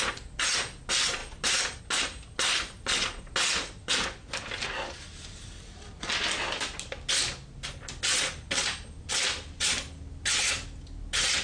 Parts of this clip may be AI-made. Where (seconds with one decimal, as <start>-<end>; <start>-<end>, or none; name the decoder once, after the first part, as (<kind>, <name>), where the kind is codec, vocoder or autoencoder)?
none